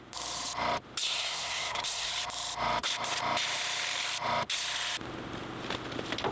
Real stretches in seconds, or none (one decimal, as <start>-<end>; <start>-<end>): 0.0-1.0; 2.1-6.3